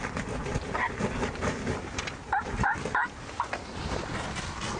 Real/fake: real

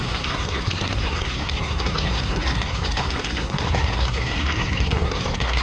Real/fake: fake